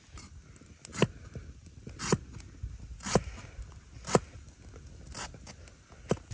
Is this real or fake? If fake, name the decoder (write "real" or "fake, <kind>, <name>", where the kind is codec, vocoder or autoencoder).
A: real